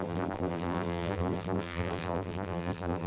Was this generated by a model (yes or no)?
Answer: yes